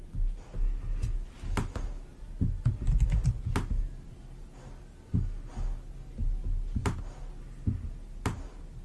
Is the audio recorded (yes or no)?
yes